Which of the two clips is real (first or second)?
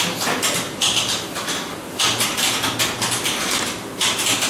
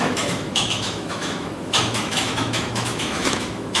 first